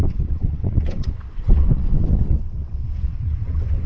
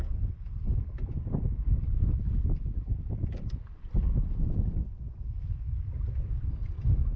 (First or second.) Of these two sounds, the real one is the second